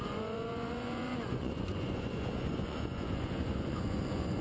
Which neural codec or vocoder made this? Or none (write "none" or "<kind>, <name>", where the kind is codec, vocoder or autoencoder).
vocoder, Vocos